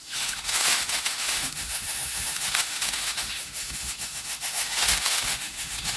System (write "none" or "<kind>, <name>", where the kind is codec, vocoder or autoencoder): autoencoder, DAC-VAE